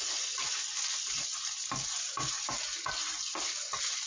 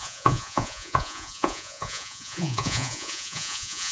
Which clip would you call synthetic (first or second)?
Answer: second